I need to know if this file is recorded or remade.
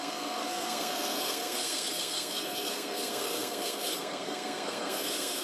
remade